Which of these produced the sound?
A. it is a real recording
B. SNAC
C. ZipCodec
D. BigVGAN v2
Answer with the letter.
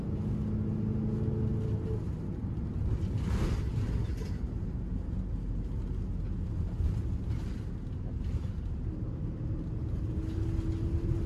A